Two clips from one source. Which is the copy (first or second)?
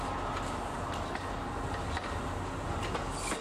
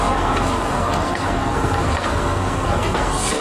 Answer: second